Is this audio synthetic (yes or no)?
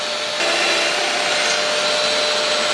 no